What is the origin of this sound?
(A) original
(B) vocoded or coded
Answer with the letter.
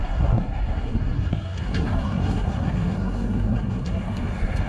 B